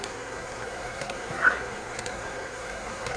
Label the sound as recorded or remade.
remade